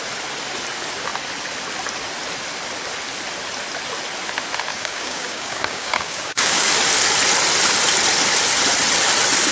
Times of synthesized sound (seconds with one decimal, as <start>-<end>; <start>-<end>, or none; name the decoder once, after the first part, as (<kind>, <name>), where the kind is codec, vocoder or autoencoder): 4.7-6.7 (codec, DAC)